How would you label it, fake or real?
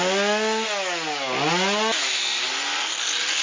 real